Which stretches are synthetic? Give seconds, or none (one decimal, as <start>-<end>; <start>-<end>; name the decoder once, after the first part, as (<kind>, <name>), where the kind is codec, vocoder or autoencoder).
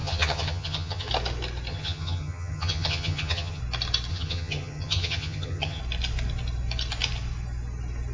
0.0-1.1 (vocoder, HiFi-GAN); 1.7-3.6; 4.1-5.8